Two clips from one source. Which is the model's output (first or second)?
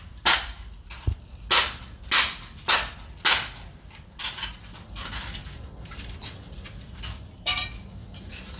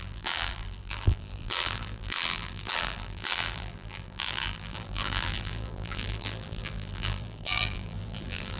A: second